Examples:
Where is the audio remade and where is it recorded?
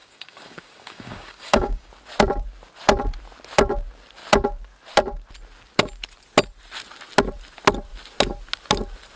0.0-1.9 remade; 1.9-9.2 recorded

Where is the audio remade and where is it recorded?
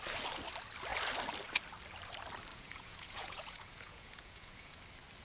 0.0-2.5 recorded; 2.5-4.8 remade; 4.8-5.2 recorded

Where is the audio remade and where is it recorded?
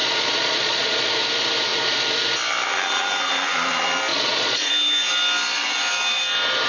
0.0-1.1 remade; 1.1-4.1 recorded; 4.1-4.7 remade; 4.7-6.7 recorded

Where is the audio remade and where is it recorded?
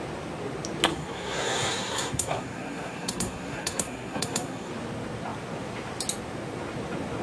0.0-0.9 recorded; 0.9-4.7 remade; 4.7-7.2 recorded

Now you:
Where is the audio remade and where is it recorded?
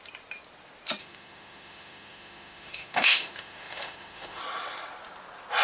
0.0-1.0 recorded; 1.0-4.4 remade; 4.4-5.6 recorded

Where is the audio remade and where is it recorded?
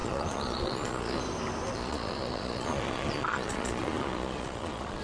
0.0-1.2 remade; 1.2-1.7 recorded; 1.7-5.0 remade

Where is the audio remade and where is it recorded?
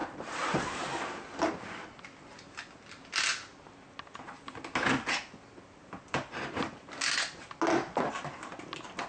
0.0-0.8 remade; 0.8-9.1 recorded